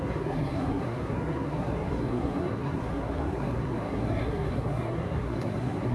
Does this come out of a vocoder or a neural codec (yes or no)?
yes